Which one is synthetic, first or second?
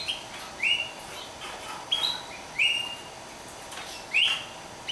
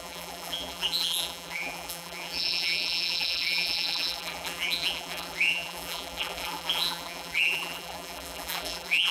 second